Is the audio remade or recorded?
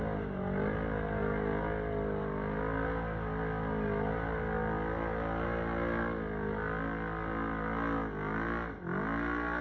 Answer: recorded